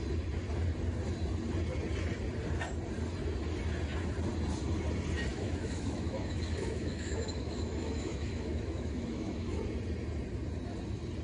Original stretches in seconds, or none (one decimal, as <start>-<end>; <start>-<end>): 0.0-5.3; 9.6-11.2